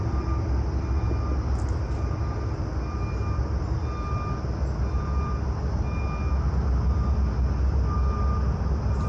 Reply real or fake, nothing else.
real